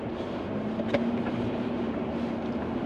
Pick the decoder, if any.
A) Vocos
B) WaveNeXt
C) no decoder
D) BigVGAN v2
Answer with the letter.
D